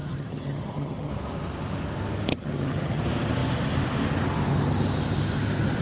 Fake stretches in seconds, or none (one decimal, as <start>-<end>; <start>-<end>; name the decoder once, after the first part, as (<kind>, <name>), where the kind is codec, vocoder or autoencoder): 0.0-1.1 (vocoder, HiFi-GAN); 2.3-3.0